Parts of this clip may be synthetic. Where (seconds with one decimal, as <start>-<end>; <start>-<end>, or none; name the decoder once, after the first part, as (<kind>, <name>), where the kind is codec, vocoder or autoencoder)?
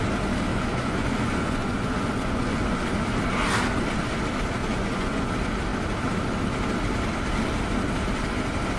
0.5-2.8 (vocoder, Vocos); 4.6-5.3